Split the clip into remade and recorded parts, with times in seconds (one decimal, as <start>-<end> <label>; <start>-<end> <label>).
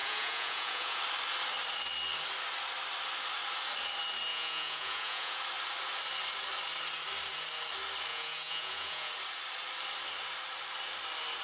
0.0-1.0 remade; 1.0-4.3 recorded; 4.3-5.4 remade; 5.4-8.1 recorded; 8.1-9.1 remade; 9.1-11.4 recorded